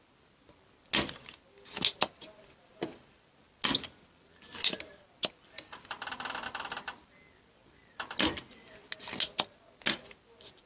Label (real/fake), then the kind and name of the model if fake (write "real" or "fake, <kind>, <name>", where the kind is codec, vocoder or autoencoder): real